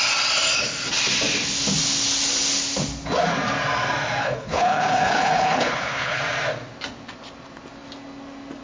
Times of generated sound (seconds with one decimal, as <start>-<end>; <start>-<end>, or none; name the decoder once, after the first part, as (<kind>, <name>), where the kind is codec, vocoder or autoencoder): 4.2-6.2 (codec, HILCodec)